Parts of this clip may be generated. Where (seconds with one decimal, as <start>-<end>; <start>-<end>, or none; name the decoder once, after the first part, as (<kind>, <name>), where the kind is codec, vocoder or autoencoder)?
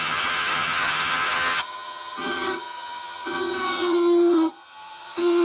0.0-5.4 (vocoder, HiFi-GAN)